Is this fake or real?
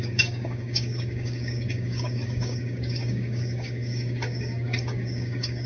fake